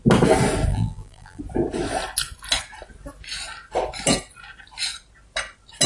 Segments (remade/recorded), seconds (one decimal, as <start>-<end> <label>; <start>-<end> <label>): 0.0-0.7 recorded; 0.7-1.4 remade; 1.4-5.9 recorded